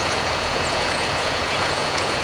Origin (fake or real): fake